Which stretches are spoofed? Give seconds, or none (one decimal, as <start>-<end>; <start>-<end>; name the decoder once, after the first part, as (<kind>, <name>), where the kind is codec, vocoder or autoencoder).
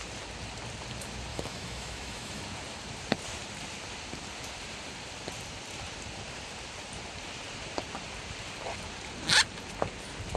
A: 1.3-2.4 (autoencoder, DAC-VAE)